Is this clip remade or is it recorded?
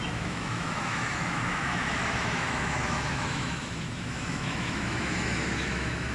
remade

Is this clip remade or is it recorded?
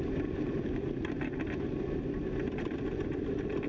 recorded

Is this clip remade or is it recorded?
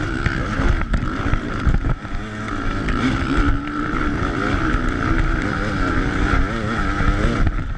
recorded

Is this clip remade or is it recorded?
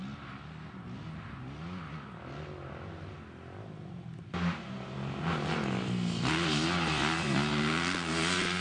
recorded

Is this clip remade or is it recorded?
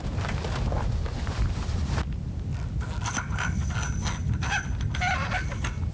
recorded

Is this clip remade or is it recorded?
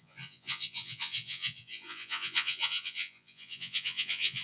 remade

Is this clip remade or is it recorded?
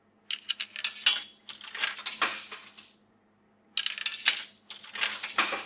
recorded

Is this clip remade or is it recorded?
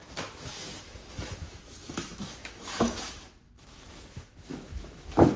remade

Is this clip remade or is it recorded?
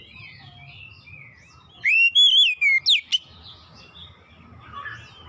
recorded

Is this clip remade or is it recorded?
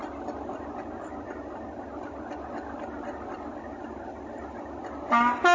recorded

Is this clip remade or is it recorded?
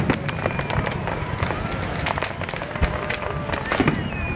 recorded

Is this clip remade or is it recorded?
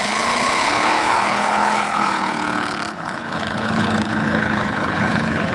remade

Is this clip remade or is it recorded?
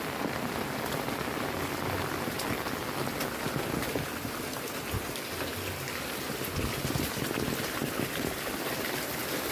recorded